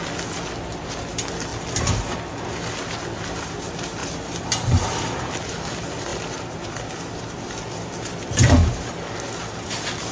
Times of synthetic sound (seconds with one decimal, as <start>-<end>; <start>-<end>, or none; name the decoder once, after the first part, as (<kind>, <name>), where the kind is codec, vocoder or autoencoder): none

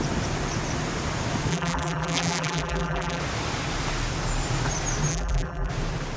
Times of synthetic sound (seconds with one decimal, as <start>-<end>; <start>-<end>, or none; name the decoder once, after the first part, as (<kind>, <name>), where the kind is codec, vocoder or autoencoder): 1.5-3.2 (vocoder, BigVGAN v2); 5.1-5.7

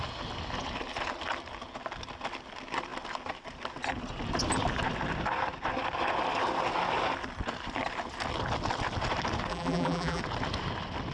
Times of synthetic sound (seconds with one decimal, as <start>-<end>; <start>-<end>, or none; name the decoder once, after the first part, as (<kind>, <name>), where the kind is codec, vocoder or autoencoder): 9.5-10.2 (vocoder, BigVGAN v2)

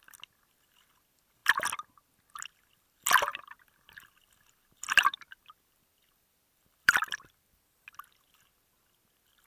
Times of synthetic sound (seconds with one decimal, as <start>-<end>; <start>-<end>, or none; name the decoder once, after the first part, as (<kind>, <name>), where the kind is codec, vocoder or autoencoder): 3.3-7.6 (vocoder, BigVGAN v2)

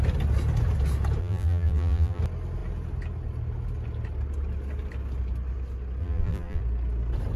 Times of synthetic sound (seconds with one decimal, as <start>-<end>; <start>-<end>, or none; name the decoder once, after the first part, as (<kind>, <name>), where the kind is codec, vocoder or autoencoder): 1.2-2.2 (vocoder, BigVGAN v2); 6.0-6.6

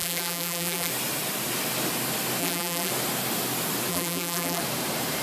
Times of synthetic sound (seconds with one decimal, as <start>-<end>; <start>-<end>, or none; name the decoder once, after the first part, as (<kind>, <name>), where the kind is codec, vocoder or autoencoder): 0.0-0.9 (vocoder, BigVGAN v2); 2.4-2.9; 3.9-4.6

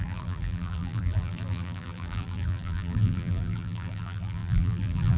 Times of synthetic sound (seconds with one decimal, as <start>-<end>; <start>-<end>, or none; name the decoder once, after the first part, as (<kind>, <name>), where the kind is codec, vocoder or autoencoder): 0.0-5.2 (vocoder, BigVGAN v2)

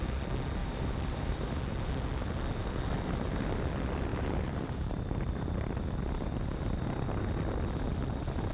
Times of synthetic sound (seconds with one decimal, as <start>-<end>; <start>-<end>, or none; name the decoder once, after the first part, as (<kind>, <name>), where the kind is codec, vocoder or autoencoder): 0.6-1.6 (vocoder, BigVGAN v2); 4.1-5.3